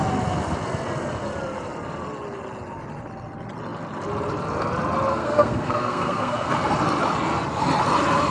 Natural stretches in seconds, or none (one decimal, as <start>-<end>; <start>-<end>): 0.0-5.1; 6.5-8.3